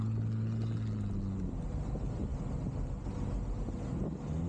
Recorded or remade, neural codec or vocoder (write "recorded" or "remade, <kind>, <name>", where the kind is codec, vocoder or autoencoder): recorded